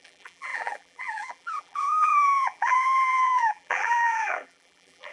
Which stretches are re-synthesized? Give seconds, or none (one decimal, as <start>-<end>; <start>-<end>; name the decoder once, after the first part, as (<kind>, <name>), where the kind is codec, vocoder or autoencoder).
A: 0.0-5.1 (vocoder, BigVGAN v2)